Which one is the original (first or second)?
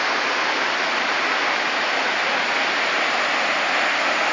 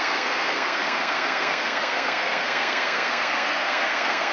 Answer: first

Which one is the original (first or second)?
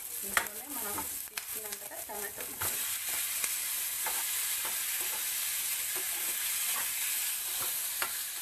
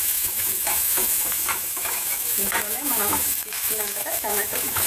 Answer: first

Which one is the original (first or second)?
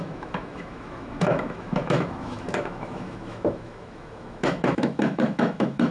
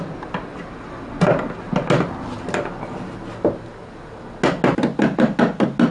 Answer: second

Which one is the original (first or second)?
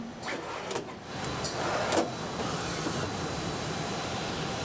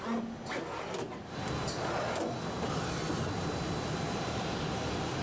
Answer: second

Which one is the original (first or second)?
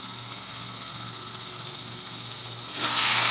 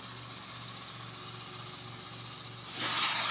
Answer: second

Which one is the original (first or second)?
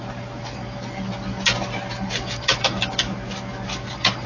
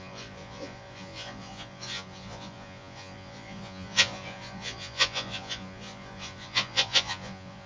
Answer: first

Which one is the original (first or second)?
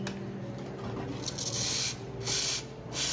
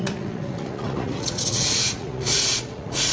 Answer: first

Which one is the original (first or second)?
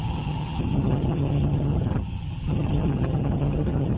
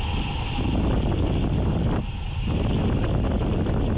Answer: second